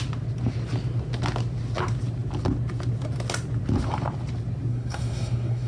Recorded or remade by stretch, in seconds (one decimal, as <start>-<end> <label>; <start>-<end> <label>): 0.0-4.7 recorded; 4.7-5.7 remade